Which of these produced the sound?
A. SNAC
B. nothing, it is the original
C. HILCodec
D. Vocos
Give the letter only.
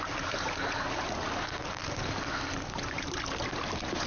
B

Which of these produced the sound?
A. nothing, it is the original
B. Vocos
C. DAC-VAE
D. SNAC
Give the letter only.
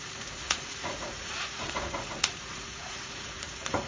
B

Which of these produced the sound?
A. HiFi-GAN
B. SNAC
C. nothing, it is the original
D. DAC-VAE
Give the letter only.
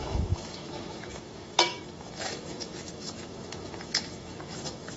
D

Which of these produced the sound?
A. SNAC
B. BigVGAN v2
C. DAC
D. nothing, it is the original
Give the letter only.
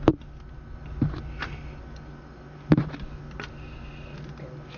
D